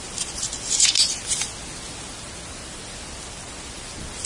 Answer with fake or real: real